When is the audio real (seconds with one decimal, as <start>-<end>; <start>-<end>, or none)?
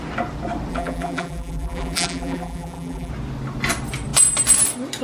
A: 0.0-0.7; 3.1-5.0